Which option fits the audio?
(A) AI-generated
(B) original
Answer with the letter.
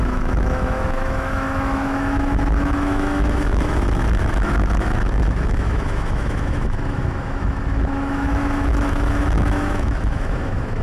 A